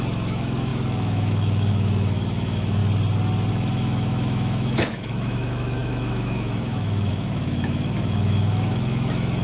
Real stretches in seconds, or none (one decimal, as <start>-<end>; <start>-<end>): 2.8-3.5